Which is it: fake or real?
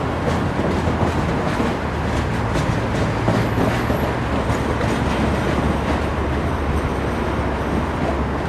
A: real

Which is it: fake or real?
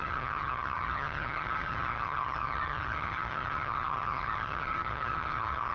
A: fake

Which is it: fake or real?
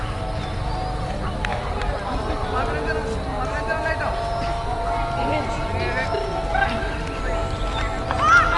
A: real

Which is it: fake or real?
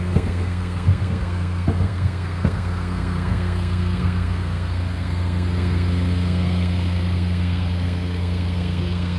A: fake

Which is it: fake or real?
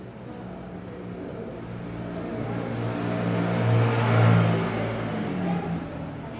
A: real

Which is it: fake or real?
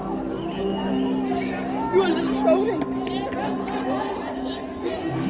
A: real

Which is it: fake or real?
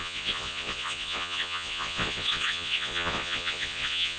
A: fake